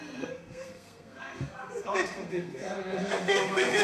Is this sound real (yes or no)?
no